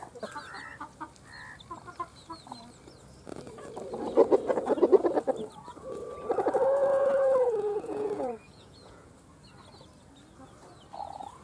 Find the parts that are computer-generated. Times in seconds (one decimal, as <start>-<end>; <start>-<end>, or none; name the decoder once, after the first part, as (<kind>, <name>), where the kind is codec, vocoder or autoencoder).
6.8-9.1 (vocoder, Vocos)